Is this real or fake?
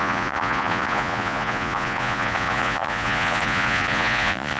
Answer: fake